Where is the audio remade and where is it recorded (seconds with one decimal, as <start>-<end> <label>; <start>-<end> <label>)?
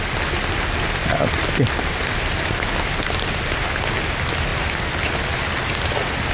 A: 0.0-6.3 recorded